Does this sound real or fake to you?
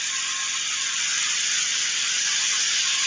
real